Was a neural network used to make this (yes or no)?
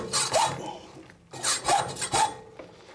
no